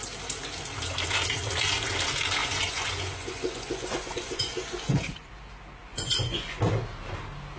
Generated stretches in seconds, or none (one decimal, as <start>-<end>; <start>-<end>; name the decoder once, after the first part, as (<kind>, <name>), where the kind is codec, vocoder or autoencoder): 2.4-5.3 (vocoder, Vocos); 5.9-6.6